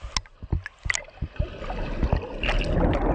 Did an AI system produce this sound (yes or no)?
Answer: no